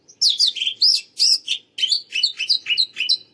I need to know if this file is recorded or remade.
recorded